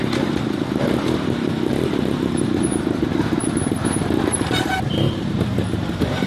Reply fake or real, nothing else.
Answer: fake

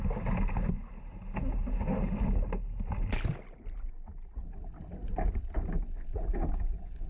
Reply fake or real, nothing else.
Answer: real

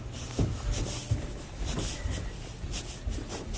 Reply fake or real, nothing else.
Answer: real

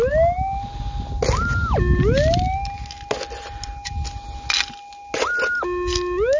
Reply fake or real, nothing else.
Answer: real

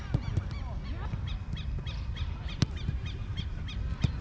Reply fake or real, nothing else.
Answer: real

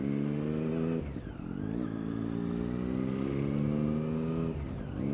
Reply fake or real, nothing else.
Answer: real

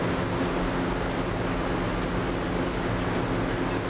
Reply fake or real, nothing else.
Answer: real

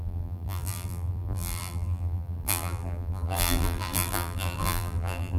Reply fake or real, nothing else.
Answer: fake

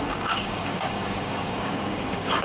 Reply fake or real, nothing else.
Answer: fake